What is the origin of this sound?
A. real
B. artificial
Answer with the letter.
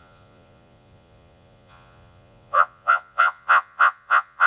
B